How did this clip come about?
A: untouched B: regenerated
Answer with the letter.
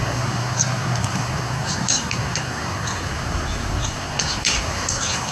B